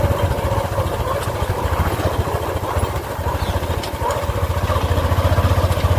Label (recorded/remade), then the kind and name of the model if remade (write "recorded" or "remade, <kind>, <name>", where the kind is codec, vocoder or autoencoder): recorded